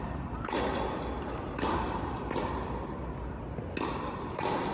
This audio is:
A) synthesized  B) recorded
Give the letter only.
B